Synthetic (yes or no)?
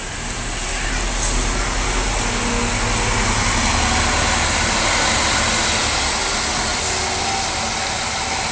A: no